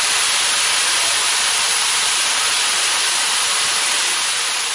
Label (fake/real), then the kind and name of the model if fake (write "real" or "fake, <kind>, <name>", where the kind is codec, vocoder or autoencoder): real